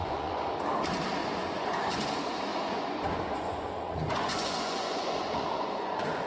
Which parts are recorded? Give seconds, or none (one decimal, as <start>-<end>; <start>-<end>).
0.5-1.2; 2.1-2.5